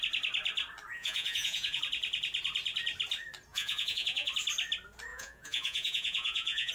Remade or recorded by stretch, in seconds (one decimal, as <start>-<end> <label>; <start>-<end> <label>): 0.0-1.0 recorded; 1.0-1.8 remade; 1.8-3.5 recorded; 3.5-4.3 remade; 4.3-5.1 recorded; 5.1-6.7 remade

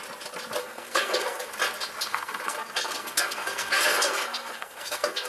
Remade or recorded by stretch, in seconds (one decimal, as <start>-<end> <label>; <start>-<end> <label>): 0.0-0.6 recorded; 0.6-1.5 remade; 1.5-2.1 recorded; 2.1-5.3 remade

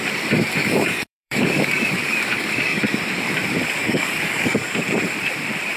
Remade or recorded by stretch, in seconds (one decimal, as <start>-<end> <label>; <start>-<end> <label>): 0.0-0.6 recorded; 0.6-2.8 remade; 2.8-3.8 recorded; 3.8-4.8 remade; 4.8-5.8 recorded

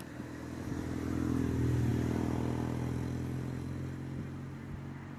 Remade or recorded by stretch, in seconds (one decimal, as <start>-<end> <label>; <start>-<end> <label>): 0.0-5.2 recorded

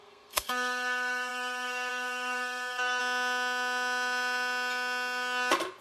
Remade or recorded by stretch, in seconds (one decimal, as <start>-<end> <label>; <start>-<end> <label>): 0.0-3.0 remade; 3.0-5.8 recorded

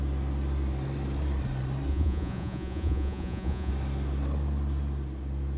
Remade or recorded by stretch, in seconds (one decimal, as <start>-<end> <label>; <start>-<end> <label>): 0.0-1.9 recorded; 1.9-3.7 remade; 3.7-5.6 recorded

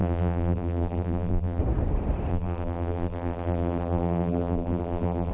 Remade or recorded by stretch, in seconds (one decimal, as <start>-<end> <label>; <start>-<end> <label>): 0.0-1.6 remade; 1.6-2.3 recorded; 2.3-5.3 remade